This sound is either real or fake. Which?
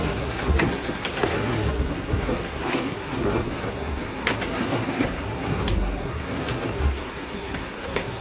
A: fake